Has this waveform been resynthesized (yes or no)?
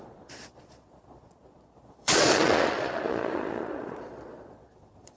yes